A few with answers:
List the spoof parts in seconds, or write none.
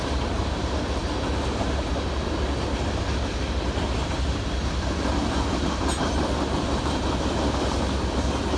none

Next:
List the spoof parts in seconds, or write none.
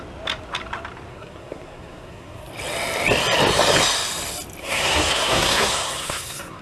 1.1-2.5 (codec, SNAC); 4.6-6.6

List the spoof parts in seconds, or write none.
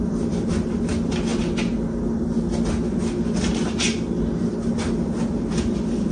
none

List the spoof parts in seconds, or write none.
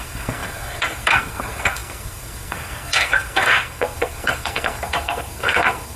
0.0-6.0 (codec, SNAC)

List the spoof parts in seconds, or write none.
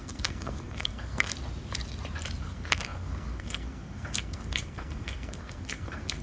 0.0-1.3 (codec, SNAC); 2.4-6.2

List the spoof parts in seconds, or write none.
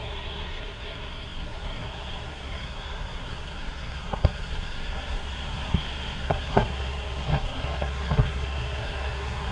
0.0-9.5 (codec, SNAC)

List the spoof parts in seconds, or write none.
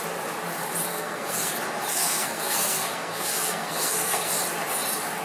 0.9-1.5 (codec, SNAC); 1.9-4.3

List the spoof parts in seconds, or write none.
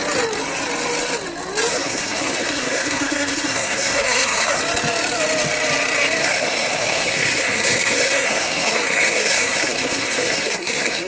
1.7-4.6 (codec, SNAC); 6.2-11.1